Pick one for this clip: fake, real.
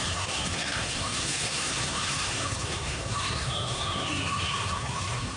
fake